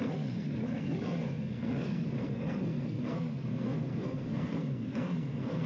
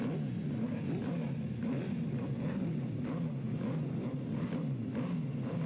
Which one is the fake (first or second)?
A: first